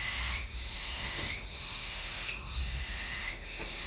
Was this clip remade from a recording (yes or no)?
yes